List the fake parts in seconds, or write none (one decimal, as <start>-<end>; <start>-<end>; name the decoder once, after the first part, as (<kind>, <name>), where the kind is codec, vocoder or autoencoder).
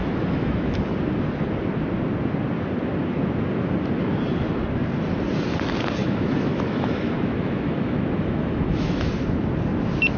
0.0-0.8 (autoencoder, DAC-VAE); 6.0-9.1